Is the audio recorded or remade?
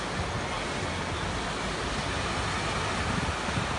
recorded